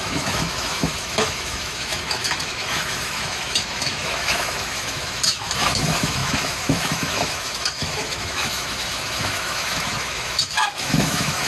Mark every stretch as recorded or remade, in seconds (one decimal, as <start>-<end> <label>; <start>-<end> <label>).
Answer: 0.0-11.5 remade